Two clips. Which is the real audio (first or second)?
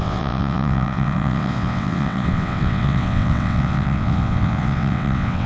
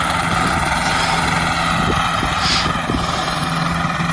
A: second